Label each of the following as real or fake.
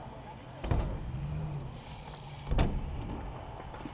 real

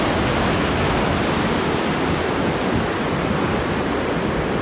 real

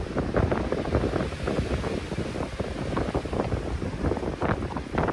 real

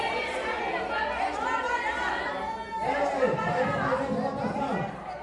real